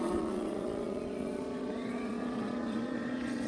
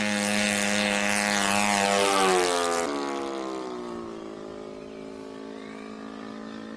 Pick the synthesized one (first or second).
first